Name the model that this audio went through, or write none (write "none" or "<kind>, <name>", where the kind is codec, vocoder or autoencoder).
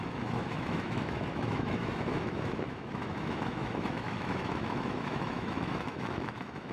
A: autoencoder, DAC-VAE